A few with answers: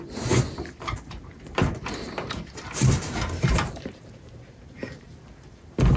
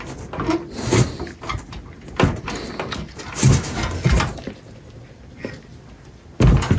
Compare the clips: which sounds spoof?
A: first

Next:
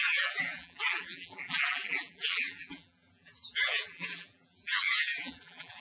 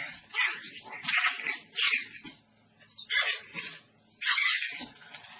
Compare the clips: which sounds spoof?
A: first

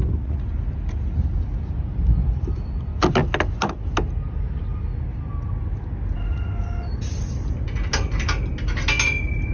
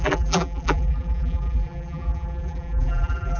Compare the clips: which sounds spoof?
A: second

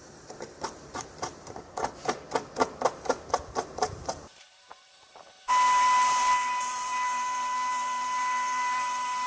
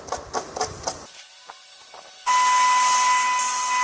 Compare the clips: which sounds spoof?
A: first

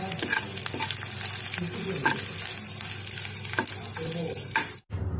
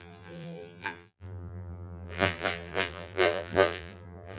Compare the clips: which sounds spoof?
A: second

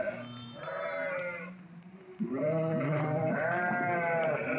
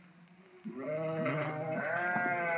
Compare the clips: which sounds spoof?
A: first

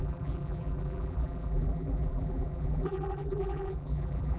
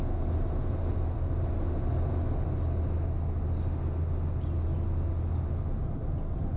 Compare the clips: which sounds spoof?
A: first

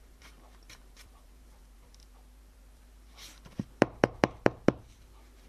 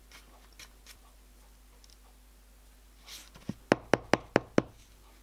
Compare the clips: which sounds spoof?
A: first